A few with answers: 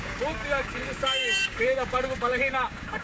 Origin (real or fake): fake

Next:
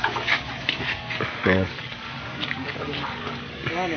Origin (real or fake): fake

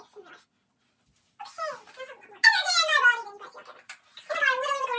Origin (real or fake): real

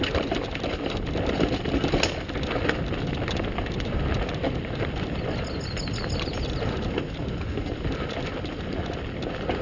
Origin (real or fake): real